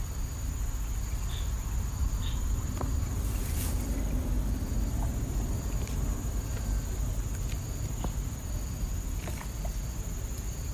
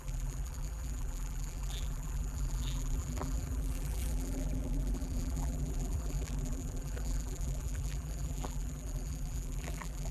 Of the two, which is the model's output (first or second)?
second